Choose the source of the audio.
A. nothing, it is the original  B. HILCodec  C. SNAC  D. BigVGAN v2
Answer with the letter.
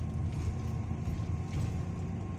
A